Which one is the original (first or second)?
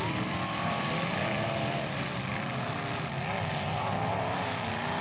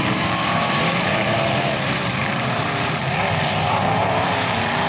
first